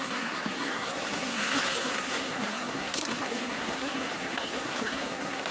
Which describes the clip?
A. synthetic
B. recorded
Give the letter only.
A